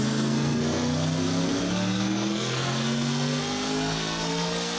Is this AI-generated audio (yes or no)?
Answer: yes